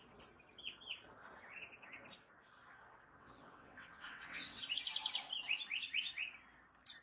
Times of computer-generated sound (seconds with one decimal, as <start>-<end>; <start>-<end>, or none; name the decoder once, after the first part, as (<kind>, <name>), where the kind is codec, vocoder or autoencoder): 3.2-4.6 (vocoder, WaveNeXt)